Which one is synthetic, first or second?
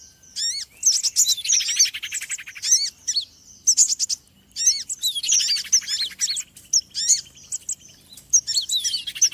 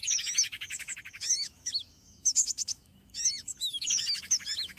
second